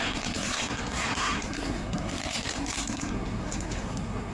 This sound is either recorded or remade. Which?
remade